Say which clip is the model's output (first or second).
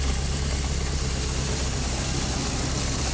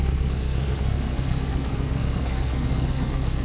second